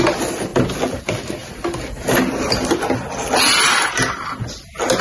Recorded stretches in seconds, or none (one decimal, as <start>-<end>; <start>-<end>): 0.0-5.0